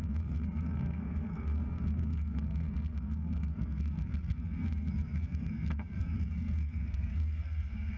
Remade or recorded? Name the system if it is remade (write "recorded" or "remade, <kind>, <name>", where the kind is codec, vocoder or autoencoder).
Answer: remade, codec, SNAC